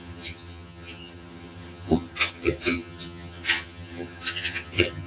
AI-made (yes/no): yes